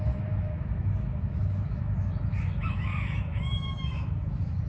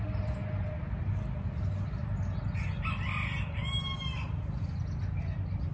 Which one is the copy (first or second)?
first